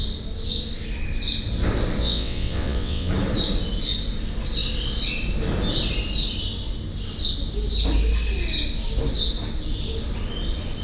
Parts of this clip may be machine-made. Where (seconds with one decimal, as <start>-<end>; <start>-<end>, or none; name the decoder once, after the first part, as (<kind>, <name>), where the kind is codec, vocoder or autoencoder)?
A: 2.0-3.1 (vocoder, WaveNeXt)